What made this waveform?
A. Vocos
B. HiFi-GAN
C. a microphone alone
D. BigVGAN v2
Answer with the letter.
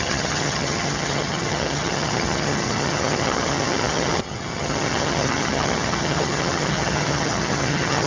B